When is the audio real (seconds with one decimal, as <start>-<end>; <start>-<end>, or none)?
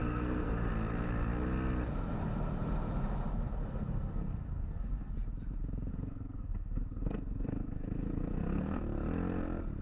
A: 0.7-3.6; 5.1-5.9; 8.8-9.8